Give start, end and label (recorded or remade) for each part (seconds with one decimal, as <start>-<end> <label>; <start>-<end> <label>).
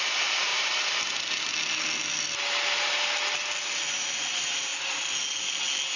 0.0-0.5 remade; 0.5-4.1 recorded; 4.1-4.7 remade; 4.7-6.0 recorded